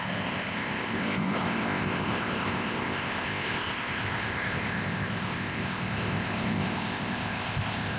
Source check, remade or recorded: remade